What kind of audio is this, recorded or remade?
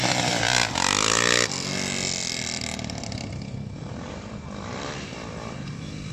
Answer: remade